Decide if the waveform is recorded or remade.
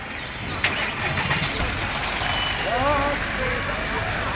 recorded